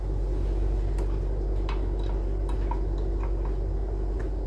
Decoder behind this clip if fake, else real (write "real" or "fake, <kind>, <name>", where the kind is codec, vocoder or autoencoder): real